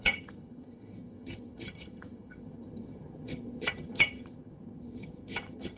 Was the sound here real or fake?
fake